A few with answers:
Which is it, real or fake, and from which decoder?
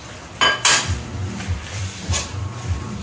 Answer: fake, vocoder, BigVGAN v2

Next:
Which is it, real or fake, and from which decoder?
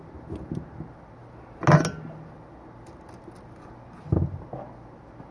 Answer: real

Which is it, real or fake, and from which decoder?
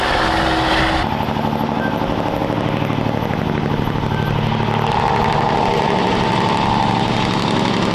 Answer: real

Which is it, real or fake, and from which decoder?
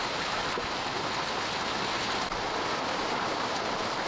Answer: real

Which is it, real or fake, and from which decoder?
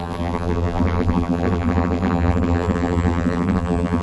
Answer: fake, vocoder, BigVGAN v2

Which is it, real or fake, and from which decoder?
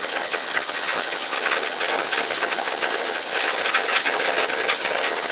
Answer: fake, vocoder, HiFi-GAN